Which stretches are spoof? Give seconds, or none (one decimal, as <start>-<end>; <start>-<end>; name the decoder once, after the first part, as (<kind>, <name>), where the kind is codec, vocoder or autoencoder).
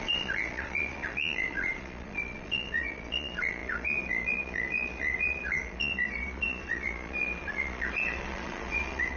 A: 0.0-9.2 (vocoder, Vocos)